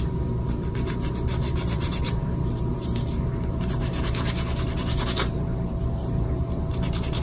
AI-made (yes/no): yes